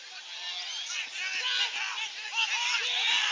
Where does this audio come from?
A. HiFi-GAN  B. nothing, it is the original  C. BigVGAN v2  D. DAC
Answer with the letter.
B